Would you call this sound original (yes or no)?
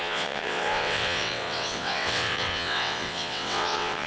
no